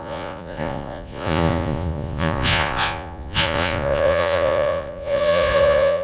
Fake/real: fake